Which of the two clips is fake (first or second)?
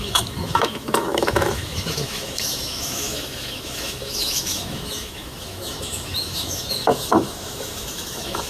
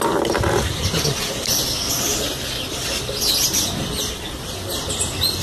first